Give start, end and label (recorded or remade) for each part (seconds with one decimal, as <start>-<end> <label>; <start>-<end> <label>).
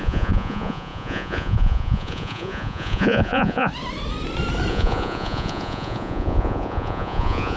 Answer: 0.0-3.7 remade; 3.7-4.7 recorded; 4.7-7.6 remade